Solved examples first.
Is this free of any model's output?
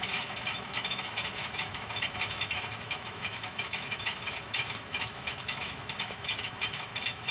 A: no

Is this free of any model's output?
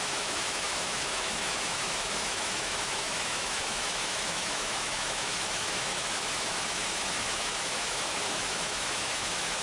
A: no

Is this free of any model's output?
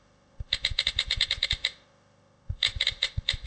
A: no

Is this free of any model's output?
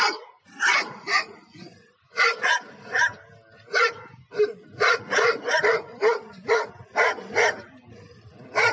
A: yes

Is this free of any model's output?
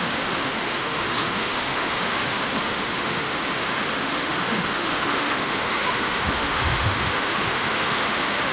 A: no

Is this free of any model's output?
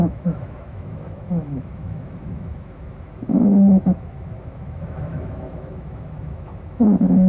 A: no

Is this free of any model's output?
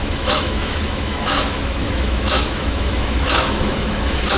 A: no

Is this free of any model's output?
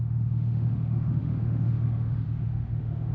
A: no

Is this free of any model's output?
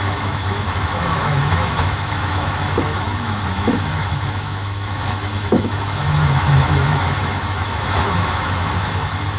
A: no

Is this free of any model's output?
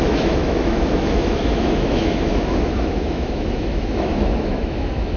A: no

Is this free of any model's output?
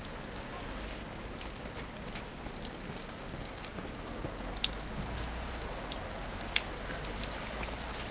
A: yes